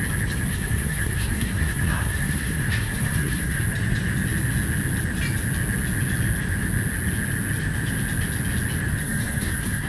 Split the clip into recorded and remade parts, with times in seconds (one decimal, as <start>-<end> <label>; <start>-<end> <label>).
0.0-0.5 recorded; 0.5-3.6 remade; 3.6-9.0 recorded; 9.0-9.9 remade